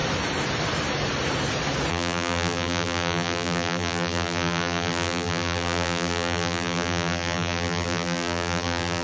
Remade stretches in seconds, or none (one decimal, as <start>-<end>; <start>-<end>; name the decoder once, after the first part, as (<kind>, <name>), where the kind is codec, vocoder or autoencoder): 1.9-9.0 (vocoder, BigVGAN v2)